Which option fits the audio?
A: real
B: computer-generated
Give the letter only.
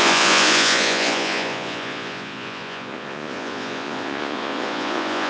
B